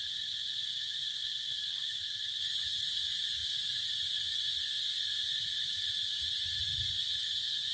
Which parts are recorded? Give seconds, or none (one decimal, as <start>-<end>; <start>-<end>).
0.0-3.4; 3.9-6.7